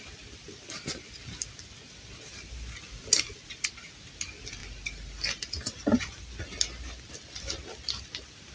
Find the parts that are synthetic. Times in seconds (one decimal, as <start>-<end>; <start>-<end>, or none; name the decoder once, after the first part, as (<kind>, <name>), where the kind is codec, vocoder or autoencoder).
none